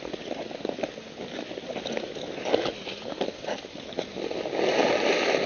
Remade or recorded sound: recorded